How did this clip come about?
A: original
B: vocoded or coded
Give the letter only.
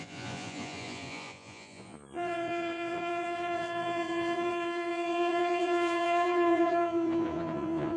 B